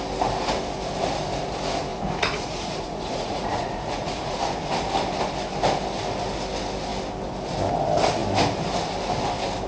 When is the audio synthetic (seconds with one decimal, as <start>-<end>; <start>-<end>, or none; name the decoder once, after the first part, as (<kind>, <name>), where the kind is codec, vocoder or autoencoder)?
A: 1.9-4.4 (vocoder, Vocos)